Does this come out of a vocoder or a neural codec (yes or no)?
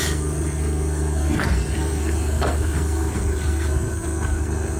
yes